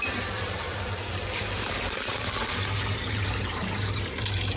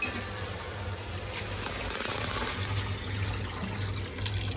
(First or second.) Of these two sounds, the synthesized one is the first